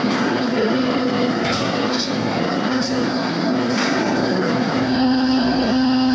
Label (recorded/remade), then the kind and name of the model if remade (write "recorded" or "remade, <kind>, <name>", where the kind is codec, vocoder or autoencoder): remade, codec, SNAC